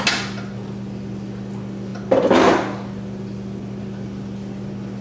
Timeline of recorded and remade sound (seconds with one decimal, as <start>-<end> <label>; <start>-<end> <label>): 0.0-5.0 recorded